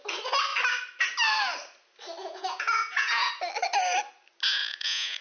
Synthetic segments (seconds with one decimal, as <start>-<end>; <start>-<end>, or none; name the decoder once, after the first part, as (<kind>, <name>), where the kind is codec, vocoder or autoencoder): 2.2-3.3 (vocoder, Vocos); 4.6-5.2